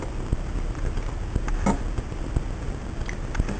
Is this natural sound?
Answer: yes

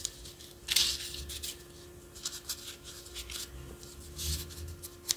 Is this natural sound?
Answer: yes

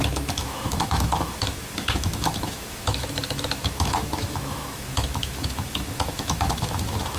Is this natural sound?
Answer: no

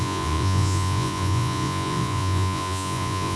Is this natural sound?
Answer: no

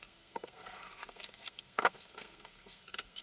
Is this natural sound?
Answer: no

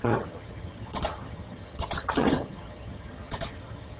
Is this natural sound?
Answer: no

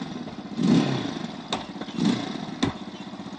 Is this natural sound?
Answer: yes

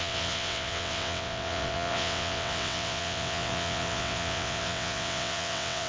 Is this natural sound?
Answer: no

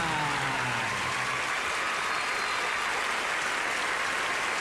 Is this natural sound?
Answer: yes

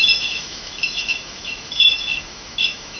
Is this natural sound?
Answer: no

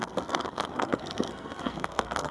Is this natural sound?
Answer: no